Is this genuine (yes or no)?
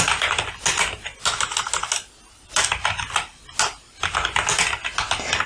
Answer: yes